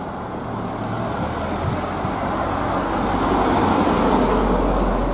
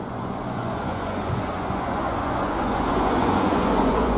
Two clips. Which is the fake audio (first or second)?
second